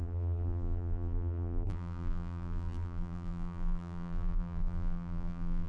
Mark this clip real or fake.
fake